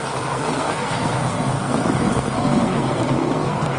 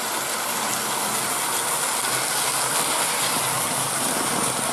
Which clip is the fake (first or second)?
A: first